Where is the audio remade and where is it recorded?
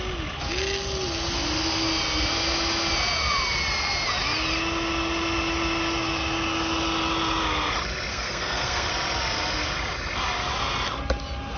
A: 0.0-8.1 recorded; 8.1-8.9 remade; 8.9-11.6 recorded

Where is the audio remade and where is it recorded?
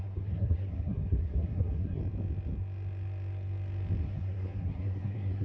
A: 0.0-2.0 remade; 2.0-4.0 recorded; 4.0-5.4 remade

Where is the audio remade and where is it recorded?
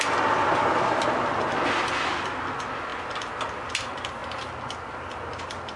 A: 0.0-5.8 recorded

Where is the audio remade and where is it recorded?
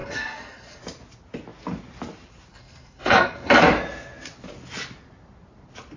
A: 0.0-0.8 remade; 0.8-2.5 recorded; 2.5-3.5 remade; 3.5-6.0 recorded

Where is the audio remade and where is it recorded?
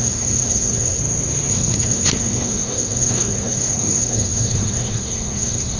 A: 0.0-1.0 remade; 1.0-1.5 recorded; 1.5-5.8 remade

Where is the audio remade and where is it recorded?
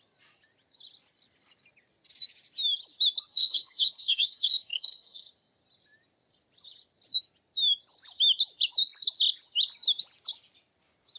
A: 0.0-3.3 recorded; 3.3-5.3 remade; 5.3-11.2 recorded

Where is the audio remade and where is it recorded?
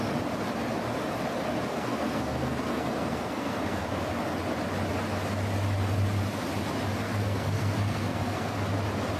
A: 0.0-1.7 recorded; 1.7-4.0 remade; 4.0-7.0 recorded; 7.0-8.6 remade; 8.6-9.2 recorded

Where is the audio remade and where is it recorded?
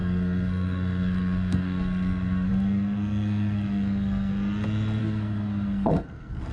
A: 0.0-4.3 remade; 4.3-5.0 recorded; 5.0-6.5 remade